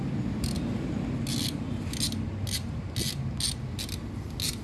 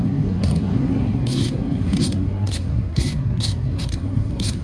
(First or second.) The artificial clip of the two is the second